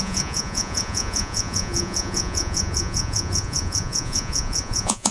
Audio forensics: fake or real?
fake